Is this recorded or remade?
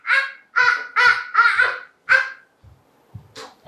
recorded